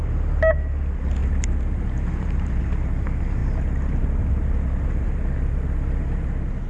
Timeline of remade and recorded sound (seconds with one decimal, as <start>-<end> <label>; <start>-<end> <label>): 0.0-1.2 recorded; 1.2-2.6 remade; 2.6-6.7 recorded